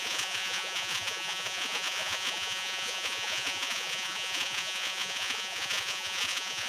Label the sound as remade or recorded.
remade